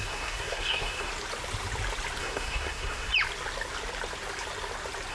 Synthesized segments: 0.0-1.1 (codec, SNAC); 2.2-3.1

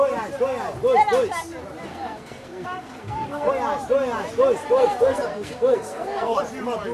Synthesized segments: 1.9-3.5 (codec, SNAC); 4.6-6.4

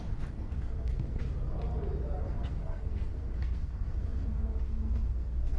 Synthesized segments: 0.0-1.2 (codec, SNAC); 2.2-5.6

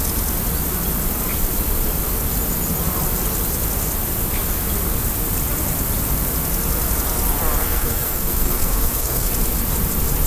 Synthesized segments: 7.6-9.3 (codec, SNAC)